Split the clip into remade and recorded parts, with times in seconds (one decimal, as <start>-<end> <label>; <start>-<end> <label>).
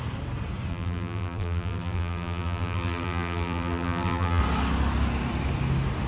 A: 0.0-0.7 recorded; 0.7-4.4 remade; 4.4-6.1 recorded